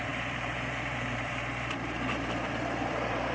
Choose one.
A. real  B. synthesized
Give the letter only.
B